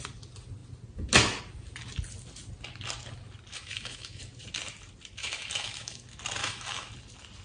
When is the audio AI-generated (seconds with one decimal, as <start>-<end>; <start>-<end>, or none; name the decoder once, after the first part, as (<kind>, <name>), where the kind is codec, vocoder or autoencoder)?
3.5-4.2 (autoencoder, DAC-VAE); 5.2-6.0; 6.4-6.9